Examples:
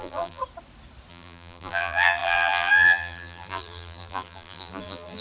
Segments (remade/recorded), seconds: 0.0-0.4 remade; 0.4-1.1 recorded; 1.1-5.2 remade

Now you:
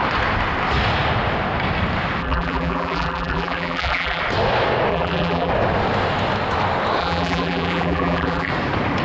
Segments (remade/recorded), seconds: 0.0-2.2 recorded; 2.2-4.2 remade; 4.2-4.9 recorded; 4.9-5.5 remade; 5.5-7.0 recorded; 7.0-8.5 remade; 8.5-9.0 recorded

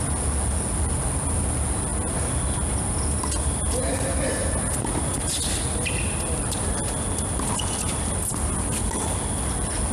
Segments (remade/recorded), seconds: 0.0-9.9 recorded